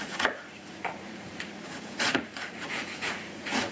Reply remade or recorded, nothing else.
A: remade